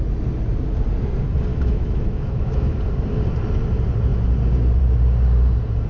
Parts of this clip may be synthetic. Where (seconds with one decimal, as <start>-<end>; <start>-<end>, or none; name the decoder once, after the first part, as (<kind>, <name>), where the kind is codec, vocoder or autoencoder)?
1.5-2.8 (autoencoder, DAC-VAE)